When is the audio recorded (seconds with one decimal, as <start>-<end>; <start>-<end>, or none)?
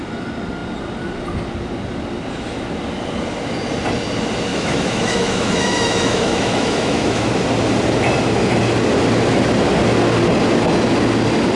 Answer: 0.0-4.5; 7.3-11.6